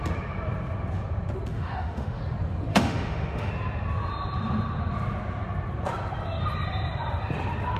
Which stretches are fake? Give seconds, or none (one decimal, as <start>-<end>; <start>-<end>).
1.5-2.2; 2.7-3.5